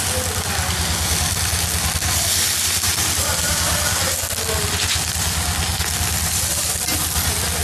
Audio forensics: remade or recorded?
recorded